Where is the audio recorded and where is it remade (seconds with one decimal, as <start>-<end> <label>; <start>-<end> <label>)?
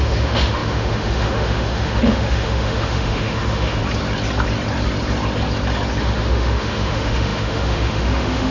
0.0-3.8 remade; 3.8-6.0 recorded; 6.0-8.5 remade